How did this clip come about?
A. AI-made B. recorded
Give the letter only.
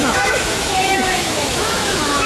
A